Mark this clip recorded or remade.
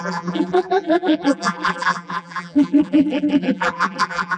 remade